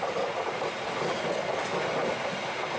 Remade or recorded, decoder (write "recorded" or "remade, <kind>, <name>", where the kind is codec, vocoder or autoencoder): recorded